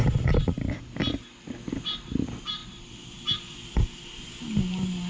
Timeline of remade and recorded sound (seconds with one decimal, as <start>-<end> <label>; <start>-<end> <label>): 0.0-5.1 recorded